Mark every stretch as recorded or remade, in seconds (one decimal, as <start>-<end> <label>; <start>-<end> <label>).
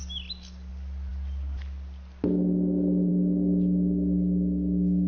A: 0.0-5.1 recorded